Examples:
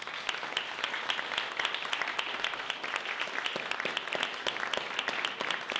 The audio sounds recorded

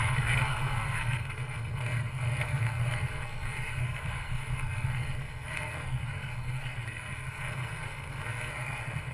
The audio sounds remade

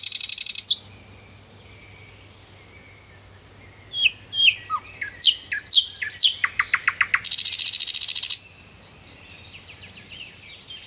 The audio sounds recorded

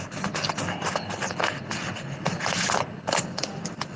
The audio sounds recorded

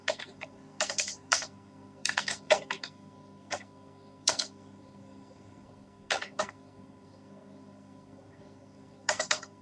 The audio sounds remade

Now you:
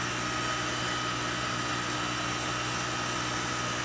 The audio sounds recorded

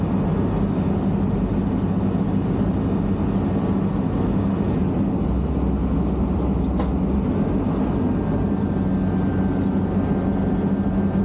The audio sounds recorded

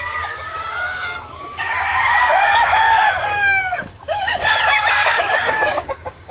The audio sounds remade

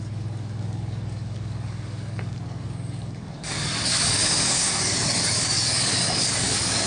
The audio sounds remade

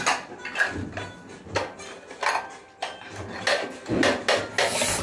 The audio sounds recorded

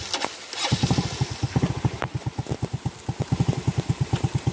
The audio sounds recorded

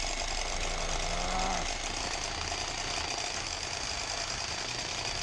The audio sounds recorded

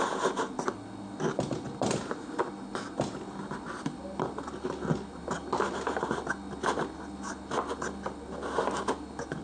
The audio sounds recorded